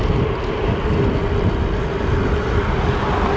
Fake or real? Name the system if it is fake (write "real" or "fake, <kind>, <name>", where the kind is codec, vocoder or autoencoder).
real